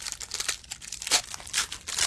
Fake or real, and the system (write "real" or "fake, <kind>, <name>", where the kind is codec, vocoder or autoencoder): real